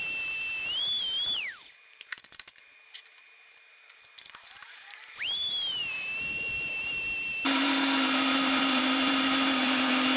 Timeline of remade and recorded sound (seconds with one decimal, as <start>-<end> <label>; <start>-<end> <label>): 0.0-10.2 remade